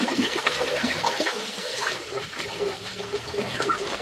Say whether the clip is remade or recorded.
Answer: remade